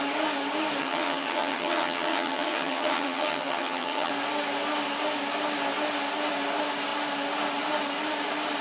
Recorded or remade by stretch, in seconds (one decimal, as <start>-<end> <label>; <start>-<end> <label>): 0.0-0.8 recorded; 0.8-4.1 remade; 4.1-8.6 recorded